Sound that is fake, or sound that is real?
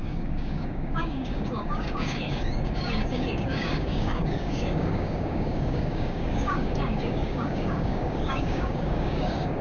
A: fake